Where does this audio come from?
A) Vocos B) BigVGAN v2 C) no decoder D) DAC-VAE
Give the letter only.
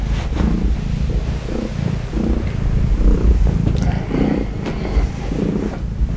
C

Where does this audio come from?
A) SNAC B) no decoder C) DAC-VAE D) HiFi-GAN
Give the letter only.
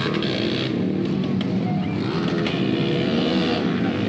B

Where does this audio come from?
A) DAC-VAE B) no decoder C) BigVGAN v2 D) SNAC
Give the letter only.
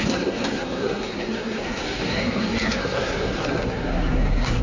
D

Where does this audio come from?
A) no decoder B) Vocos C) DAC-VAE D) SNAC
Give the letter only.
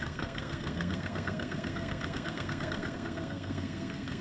D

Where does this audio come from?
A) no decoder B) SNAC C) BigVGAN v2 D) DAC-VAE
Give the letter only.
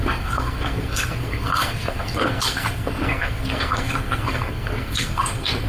B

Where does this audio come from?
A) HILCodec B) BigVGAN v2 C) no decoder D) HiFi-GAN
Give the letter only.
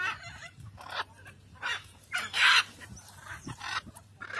B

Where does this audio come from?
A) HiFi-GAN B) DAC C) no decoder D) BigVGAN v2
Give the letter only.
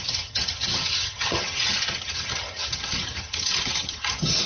A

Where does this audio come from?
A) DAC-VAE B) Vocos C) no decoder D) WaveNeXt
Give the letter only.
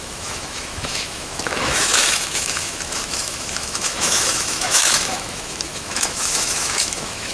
A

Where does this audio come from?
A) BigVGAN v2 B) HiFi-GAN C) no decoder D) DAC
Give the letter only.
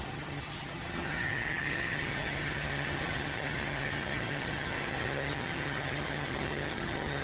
B